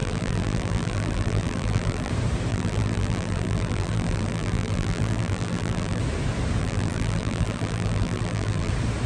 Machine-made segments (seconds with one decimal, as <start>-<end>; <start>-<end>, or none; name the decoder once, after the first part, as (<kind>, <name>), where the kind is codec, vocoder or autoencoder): 0.0-2.1 (vocoder, BigVGAN v2); 2.5-6.0; 6.6-8.7